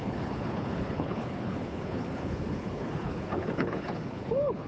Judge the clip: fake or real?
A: fake